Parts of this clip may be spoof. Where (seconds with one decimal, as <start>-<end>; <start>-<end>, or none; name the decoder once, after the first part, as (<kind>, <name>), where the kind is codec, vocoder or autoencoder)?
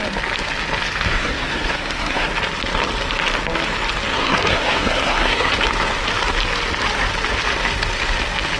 1.1-2.3 (codec, SNAC); 4.1-5.5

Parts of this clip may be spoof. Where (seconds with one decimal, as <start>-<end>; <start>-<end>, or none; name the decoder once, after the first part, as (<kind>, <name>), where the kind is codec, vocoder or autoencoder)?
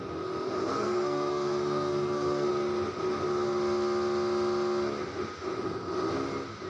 0.7-2.5 (codec, SNAC)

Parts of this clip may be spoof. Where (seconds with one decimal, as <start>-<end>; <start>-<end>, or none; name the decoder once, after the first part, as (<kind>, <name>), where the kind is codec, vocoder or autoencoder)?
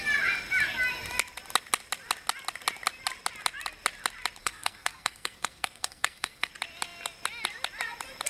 4.4-6.5 (codec, SNAC)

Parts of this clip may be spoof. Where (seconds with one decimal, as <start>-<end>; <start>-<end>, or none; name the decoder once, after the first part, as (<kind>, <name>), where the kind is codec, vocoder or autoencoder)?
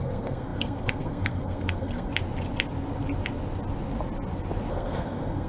0.0-2.1 (codec, SNAC); 4.7-5.5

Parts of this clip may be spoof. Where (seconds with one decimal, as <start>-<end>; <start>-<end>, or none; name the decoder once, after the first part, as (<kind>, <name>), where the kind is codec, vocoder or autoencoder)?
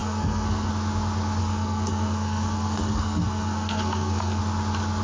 0.0-0.7 (codec, SNAC); 1.4-4.4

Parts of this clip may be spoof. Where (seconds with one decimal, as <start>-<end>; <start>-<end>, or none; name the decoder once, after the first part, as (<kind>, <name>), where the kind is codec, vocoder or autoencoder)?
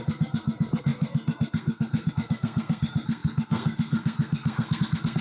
0.0-5.2 (codec, SNAC)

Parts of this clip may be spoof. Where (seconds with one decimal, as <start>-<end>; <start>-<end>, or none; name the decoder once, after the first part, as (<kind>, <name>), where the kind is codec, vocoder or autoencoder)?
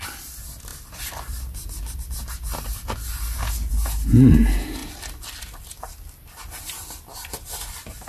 none